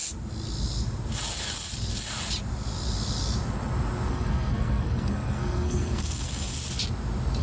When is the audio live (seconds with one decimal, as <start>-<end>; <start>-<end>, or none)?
0.0-4.1; 6.6-7.4